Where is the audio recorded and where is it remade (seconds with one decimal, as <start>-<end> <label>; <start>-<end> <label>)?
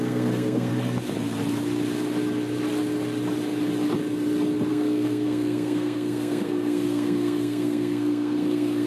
0.0-0.7 remade; 0.7-4.7 recorded; 4.7-8.9 remade